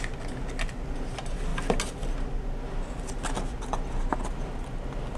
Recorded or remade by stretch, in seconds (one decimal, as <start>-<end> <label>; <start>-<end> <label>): 0.0-5.2 recorded